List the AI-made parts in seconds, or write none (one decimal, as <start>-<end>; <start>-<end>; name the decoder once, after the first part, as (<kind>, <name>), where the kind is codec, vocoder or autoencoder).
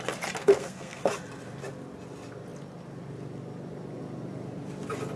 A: 0.4-1.0 (codec, SNAC)